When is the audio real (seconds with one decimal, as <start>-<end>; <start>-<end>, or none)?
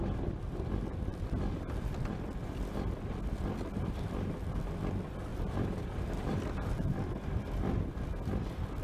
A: 0.0-5.3; 7.8-8.8